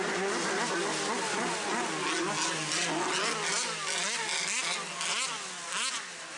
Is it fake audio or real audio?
real